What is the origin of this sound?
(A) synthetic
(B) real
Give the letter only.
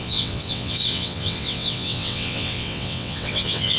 A